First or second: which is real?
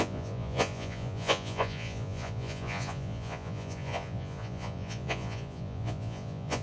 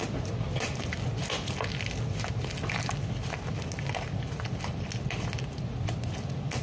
second